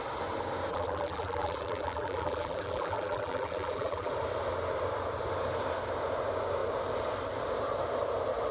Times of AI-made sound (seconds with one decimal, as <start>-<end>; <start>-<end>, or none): 0.7-4.1